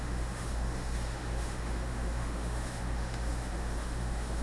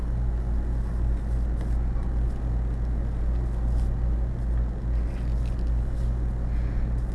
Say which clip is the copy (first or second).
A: first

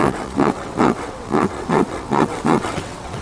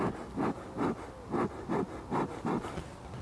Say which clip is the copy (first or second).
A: first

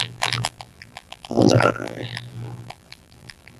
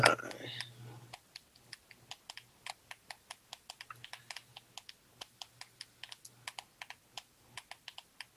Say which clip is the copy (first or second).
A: first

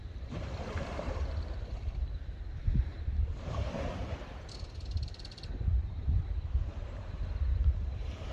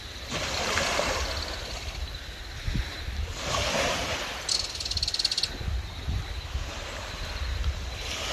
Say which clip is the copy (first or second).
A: first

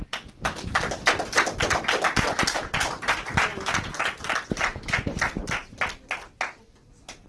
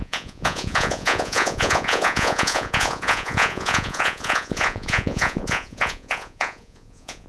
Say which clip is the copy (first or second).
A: second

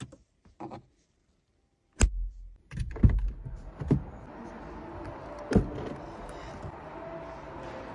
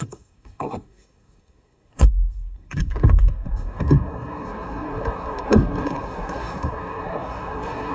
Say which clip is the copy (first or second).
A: second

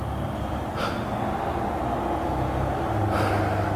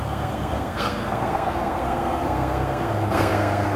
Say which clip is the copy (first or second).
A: second